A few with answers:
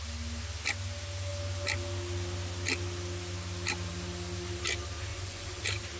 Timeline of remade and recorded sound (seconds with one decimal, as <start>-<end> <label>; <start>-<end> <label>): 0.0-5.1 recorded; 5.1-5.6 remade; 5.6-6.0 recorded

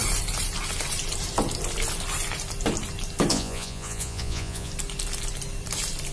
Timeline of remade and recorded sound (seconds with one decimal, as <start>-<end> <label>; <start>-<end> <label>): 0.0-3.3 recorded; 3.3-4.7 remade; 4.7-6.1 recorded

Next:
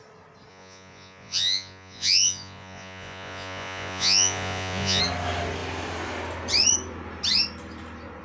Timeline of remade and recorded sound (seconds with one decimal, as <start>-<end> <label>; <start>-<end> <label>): 0.0-0.5 recorded; 0.5-5.0 remade; 5.0-8.2 recorded